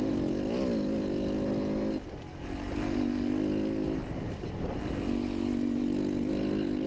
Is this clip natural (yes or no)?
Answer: yes